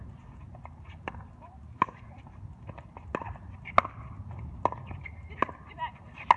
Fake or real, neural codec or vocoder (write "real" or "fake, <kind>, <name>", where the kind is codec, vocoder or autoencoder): real